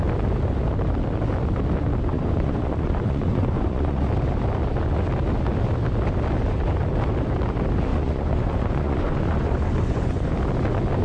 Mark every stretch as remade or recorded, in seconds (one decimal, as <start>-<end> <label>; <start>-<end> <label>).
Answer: 0.0-2.1 recorded; 2.1-4.0 remade; 4.0-7.9 recorded; 7.9-10.3 remade; 10.3-11.0 recorded

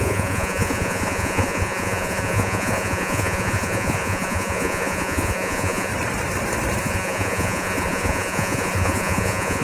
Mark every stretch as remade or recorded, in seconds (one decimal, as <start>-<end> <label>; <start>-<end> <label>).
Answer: 0.0-5.9 remade; 5.9-6.8 recorded; 6.8-9.6 remade

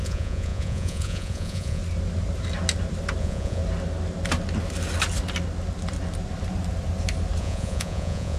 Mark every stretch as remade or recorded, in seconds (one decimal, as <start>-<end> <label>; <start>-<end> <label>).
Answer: 0.0-1.8 remade; 1.8-3.2 recorded; 3.2-3.6 remade; 3.6-7.4 recorded; 7.4-8.4 remade

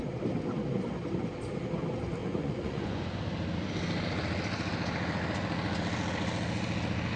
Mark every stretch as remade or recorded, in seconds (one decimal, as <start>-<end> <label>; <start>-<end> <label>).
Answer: 0.0-2.2 recorded; 2.2-3.2 remade; 3.2-7.2 recorded

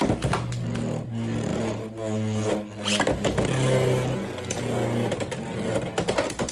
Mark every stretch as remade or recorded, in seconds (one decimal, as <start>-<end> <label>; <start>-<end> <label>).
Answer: 0.0-6.5 recorded

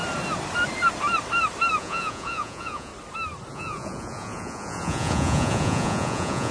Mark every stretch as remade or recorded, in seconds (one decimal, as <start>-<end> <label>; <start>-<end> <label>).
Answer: 0.0-1.8 recorded; 1.8-2.9 remade; 2.9-3.5 recorded; 3.5-6.5 remade